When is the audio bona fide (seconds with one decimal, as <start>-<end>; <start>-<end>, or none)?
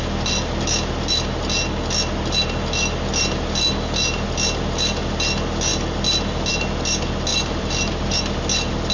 0.0-7.3; 8.2-8.9